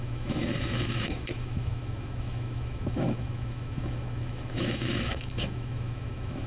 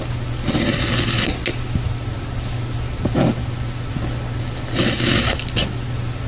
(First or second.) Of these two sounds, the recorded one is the second